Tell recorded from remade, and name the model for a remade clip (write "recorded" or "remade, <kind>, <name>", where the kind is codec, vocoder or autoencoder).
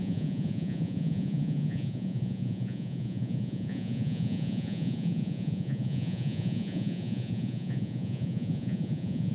remade, vocoder, Vocos